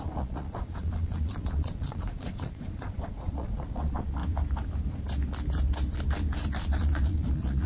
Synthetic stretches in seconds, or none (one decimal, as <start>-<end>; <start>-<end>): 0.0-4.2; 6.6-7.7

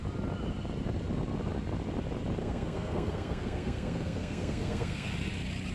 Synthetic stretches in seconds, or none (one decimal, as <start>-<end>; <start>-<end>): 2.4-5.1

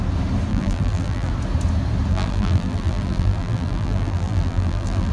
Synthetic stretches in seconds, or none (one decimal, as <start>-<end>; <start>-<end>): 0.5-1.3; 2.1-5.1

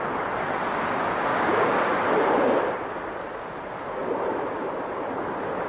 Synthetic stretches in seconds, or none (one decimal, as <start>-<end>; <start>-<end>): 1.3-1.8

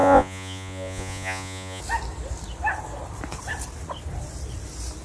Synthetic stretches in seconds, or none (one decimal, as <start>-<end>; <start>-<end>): 0.0-1.8

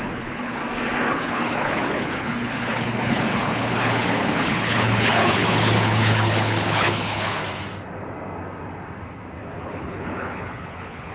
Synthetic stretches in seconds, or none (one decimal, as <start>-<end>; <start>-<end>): 0.0-0.6; 1.1-7.4; 9.5-11.1

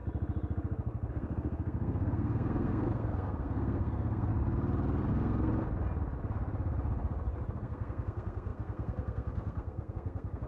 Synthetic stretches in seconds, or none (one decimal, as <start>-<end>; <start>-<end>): 1.1-4.3; 5.1-5.5; 7.5-10.5